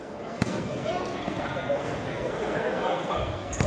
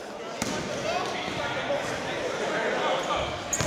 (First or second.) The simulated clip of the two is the first